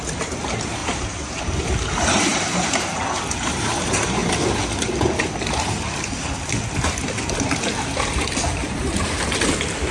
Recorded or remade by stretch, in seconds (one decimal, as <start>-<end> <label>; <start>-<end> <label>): 0.0-0.8 recorded; 0.8-1.4 remade; 1.4-2.3 recorded; 2.3-3.5 remade; 3.5-8.6 recorded; 8.6-9.1 remade; 9.1-9.9 recorded